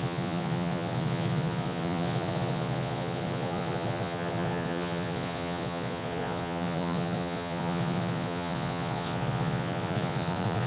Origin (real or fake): fake